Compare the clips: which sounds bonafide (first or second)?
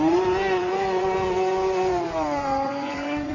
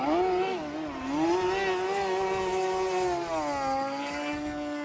second